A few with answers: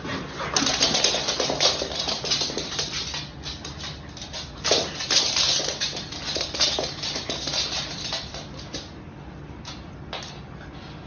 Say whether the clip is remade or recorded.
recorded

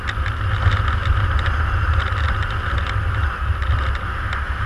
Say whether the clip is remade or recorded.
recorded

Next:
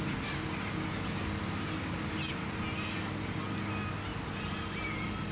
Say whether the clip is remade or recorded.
recorded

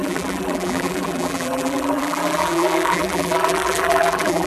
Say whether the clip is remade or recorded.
remade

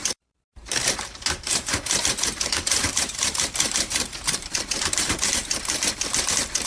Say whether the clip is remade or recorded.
remade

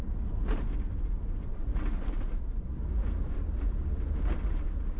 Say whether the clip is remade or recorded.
recorded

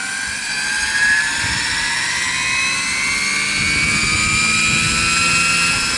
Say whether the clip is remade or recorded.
recorded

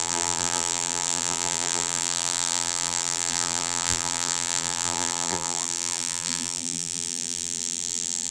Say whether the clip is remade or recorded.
remade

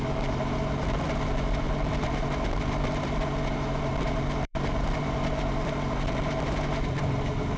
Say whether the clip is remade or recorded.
remade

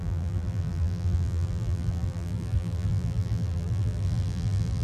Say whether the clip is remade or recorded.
remade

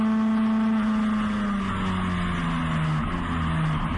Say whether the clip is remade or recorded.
recorded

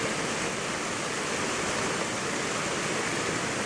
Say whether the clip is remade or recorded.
recorded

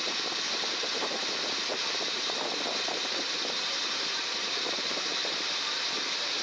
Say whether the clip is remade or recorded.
remade